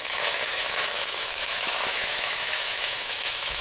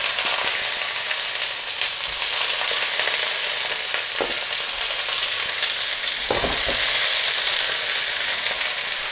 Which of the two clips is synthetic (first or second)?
first